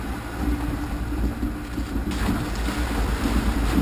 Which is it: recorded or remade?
recorded